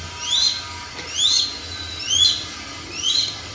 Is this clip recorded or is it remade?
recorded